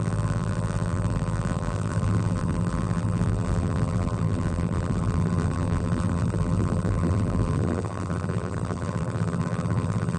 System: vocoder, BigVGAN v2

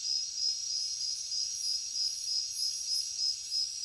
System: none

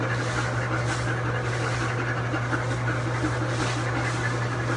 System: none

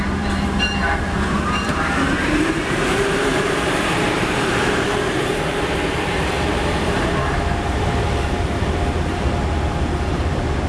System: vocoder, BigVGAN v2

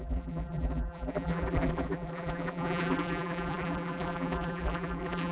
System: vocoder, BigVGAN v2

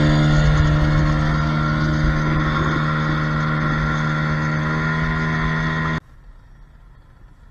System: none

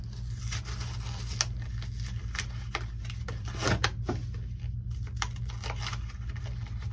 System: none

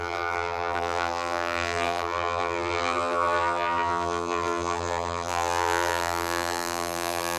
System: vocoder, BigVGAN v2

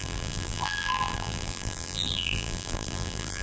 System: vocoder, BigVGAN v2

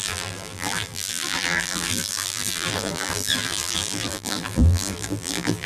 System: vocoder, BigVGAN v2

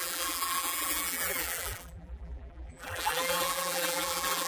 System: vocoder, BigVGAN v2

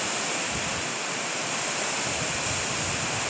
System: none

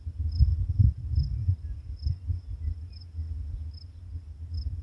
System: none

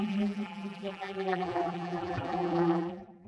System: vocoder, BigVGAN v2